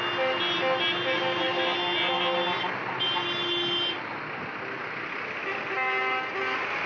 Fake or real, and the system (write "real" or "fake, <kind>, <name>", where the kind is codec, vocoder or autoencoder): real